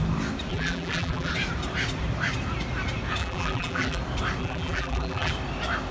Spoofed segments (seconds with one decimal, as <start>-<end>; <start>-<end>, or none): 0.5-1.3; 3.2-4.0; 4.4-5.3